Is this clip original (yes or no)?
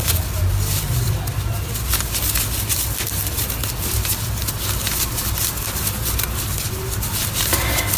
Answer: yes